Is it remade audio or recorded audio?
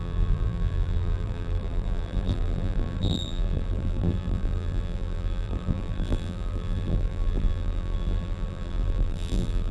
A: remade